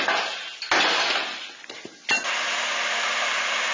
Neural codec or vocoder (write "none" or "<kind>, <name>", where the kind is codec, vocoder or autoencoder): none